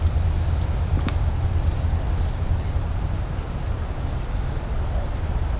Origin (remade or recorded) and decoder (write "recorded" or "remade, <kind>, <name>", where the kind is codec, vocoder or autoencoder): recorded